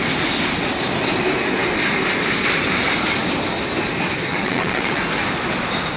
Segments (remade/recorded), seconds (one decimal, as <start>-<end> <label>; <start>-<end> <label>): 0.0-4.3 recorded; 4.3-5.0 remade; 5.0-6.0 recorded

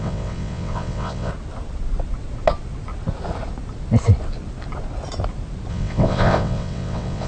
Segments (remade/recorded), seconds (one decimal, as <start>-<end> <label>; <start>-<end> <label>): 0.0-1.3 remade; 1.3-5.7 recorded; 5.7-7.3 remade

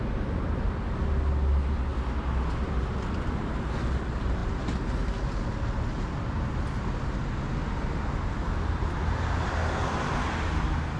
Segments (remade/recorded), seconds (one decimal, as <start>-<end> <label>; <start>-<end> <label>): 0.0-11.0 recorded

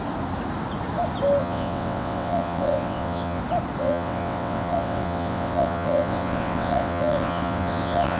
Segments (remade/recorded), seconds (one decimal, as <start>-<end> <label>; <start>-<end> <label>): 0.0-1.4 recorded; 1.4-3.4 remade; 3.4-3.8 recorded; 3.8-8.2 remade

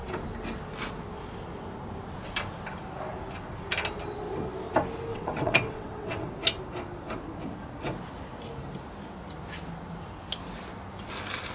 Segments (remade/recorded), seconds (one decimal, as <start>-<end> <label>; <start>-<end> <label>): 0.0-5.1 recorded; 5.1-6.3 remade; 6.3-11.5 recorded

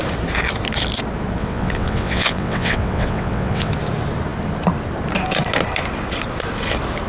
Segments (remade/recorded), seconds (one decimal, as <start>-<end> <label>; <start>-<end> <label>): 0.0-1.4 recorded; 1.4-3.7 remade; 3.7-7.1 recorded

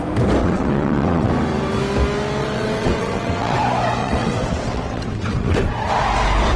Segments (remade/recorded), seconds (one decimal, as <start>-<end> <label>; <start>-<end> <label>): 0.0-0.4 recorded; 0.4-1.3 remade; 1.3-2.4 recorded; 2.4-3.6 remade; 3.6-4.0 recorded; 4.0-5.6 remade; 5.6-6.6 recorded

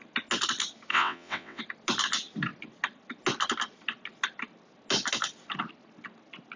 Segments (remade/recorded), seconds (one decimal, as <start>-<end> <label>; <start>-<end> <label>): 0.0-0.9 recorded; 0.9-1.6 remade; 1.6-6.6 recorded